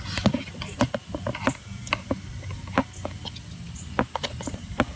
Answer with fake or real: real